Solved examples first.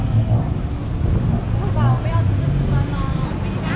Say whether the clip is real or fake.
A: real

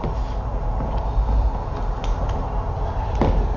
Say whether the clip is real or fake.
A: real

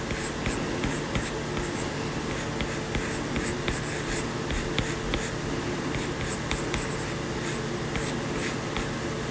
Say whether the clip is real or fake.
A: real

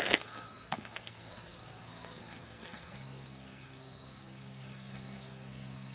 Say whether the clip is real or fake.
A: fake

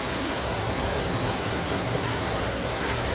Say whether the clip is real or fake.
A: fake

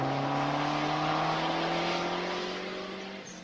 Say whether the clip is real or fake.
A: real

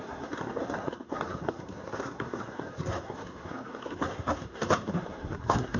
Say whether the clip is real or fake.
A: fake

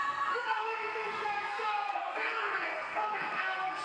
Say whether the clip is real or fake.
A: fake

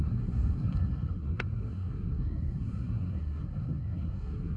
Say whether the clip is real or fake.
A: fake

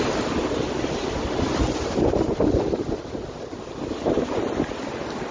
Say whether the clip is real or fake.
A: real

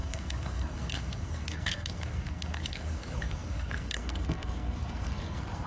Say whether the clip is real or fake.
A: fake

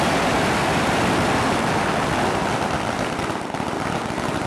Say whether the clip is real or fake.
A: real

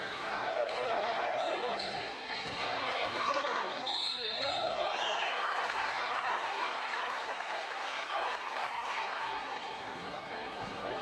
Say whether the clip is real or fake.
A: fake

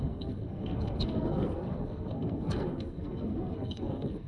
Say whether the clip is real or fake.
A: fake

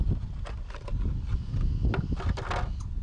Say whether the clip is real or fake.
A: real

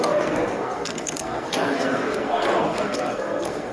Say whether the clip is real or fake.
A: fake